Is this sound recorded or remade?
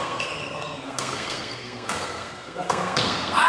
remade